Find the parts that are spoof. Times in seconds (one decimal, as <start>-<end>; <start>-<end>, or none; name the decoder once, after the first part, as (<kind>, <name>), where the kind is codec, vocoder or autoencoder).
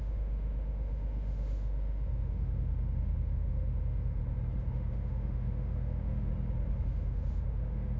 0.0-4.2 (autoencoder, DAC-VAE); 4.7-6.3; 6.8-8.0